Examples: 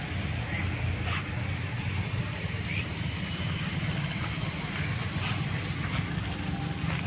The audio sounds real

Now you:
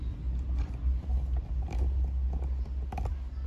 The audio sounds real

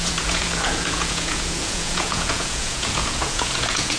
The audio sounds fake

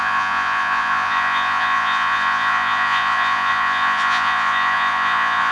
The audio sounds fake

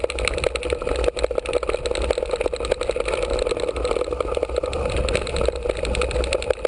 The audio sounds real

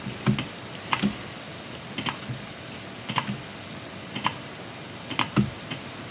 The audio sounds real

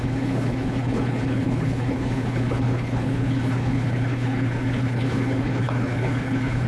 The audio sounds fake